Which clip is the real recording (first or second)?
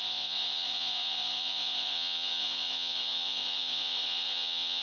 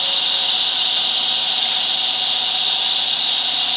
second